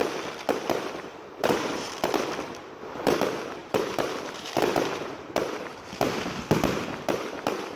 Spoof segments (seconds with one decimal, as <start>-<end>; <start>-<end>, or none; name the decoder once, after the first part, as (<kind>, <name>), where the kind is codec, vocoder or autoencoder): 1.1-1.9 (vocoder, BigVGAN v2); 3.6-6.4